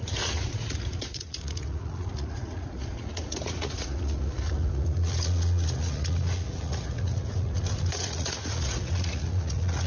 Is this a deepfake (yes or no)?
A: yes